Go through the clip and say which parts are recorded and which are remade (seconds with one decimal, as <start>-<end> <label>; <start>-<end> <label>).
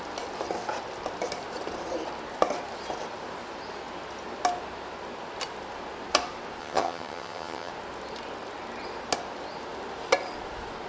0.0-6.6 recorded; 6.6-7.7 remade; 7.7-10.9 recorded